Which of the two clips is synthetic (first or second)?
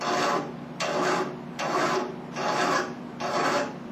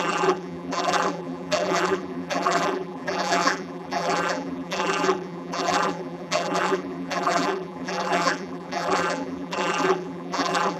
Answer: second